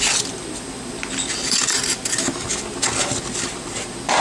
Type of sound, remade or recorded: recorded